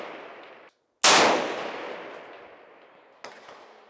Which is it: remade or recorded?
recorded